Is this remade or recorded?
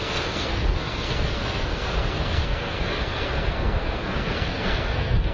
remade